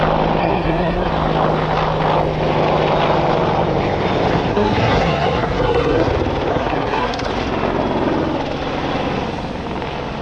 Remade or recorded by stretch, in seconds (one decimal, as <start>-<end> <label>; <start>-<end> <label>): 0.0-0.4 recorded; 0.4-1.1 remade; 1.1-4.5 recorded; 4.5-6.1 remade; 6.1-6.5 recorded; 6.5-7.3 remade; 7.3-10.2 recorded